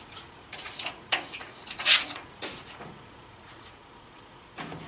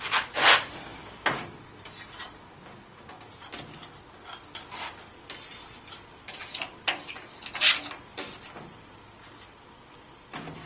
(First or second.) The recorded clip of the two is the second